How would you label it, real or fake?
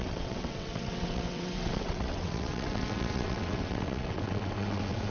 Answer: fake